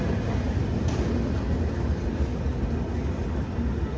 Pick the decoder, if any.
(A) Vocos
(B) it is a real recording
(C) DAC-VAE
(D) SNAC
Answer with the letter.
B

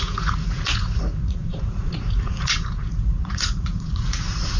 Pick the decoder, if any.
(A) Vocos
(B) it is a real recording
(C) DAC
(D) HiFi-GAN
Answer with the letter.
A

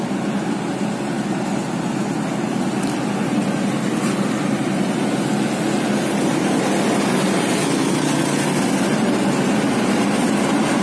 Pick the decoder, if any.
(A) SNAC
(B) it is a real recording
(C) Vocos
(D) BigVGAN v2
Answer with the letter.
B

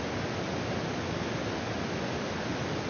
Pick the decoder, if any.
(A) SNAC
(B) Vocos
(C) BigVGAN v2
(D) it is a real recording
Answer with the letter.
D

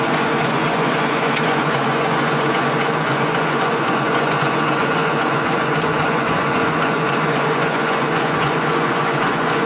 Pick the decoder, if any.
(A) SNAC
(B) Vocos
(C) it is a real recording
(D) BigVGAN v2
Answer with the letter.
B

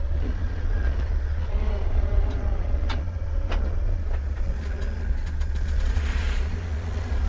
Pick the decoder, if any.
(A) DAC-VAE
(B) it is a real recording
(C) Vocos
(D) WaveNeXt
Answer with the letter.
C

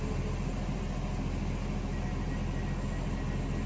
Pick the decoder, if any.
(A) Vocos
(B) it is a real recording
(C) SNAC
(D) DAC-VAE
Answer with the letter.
B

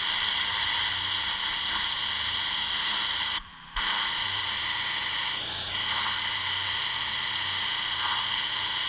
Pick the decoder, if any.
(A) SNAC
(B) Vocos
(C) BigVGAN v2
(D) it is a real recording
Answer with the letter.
D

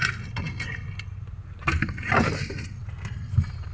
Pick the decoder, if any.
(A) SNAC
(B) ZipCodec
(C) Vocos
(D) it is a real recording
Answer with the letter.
D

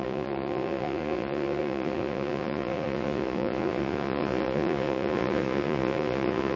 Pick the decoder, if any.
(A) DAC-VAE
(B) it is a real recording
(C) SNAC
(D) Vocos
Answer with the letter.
D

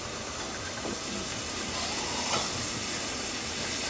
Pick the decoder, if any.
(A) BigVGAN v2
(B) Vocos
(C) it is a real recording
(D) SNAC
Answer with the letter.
C